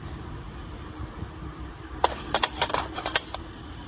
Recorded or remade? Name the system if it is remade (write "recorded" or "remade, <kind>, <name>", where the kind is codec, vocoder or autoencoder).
remade, vocoder, BigVGAN v2